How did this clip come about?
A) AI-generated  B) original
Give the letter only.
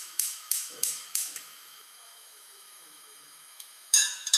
A